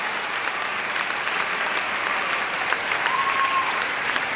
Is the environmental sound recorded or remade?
remade